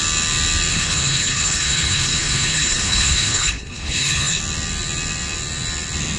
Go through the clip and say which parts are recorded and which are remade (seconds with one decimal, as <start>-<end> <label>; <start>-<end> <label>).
0.0-0.7 recorded; 0.7-4.4 remade; 4.4-6.2 recorded